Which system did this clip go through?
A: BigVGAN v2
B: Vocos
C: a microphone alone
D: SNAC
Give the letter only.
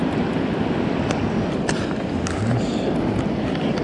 C